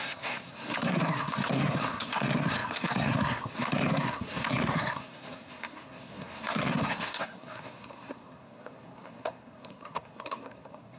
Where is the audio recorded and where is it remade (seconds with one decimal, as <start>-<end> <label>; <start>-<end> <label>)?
0.0-11.0 remade